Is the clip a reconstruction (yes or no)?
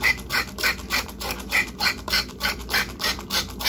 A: yes